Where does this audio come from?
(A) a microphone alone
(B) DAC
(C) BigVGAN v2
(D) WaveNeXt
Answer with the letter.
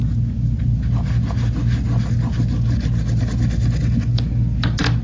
A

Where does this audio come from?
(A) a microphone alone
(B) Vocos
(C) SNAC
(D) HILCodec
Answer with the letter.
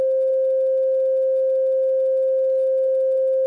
A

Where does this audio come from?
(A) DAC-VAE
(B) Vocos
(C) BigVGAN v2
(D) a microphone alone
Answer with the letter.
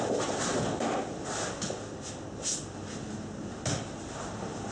D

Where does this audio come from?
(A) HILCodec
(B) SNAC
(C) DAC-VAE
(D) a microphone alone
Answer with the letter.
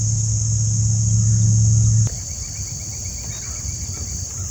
D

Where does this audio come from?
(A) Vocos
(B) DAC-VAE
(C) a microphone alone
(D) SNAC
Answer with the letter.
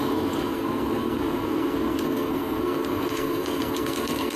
D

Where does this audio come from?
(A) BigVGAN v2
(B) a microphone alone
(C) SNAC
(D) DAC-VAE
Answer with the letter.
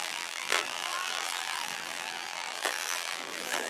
A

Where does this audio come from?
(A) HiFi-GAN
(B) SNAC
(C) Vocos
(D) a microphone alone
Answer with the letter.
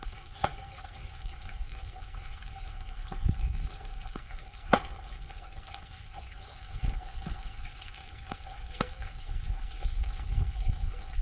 B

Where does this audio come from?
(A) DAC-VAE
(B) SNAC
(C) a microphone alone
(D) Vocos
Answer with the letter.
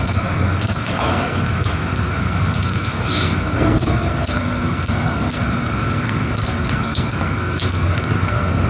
B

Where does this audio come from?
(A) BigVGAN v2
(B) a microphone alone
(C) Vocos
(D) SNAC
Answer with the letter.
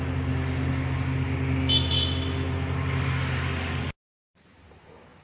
B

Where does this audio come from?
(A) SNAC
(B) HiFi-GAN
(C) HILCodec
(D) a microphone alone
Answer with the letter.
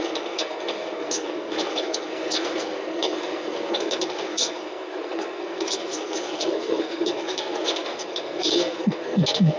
A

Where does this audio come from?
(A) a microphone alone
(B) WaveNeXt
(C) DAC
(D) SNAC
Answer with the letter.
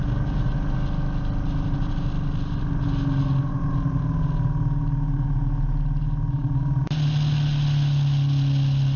A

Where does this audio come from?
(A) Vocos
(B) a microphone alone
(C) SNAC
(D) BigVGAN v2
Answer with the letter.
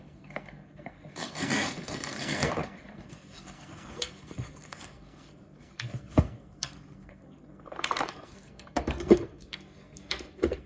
C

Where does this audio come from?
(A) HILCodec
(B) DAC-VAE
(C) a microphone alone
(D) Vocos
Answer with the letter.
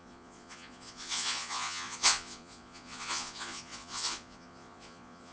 D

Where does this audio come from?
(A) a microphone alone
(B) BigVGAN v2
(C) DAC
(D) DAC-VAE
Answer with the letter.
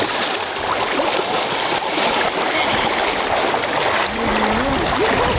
A